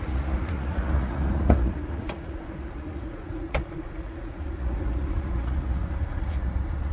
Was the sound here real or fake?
fake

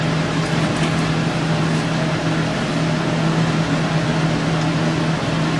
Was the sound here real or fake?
real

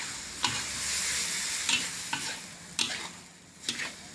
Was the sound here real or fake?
real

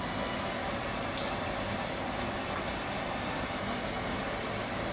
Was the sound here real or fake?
real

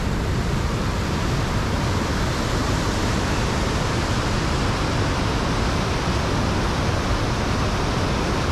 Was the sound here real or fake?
real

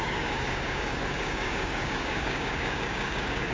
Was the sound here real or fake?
fake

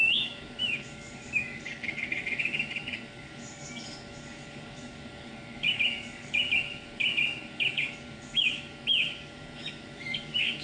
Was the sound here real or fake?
fake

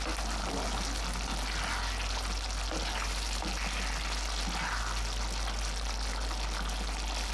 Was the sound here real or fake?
real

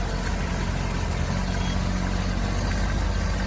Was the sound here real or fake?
real